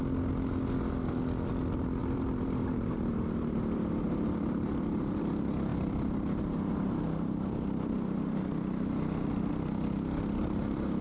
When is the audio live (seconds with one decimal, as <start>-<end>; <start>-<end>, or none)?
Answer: 0.0-2.0; 5.2-11.0